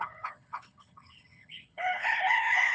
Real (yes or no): no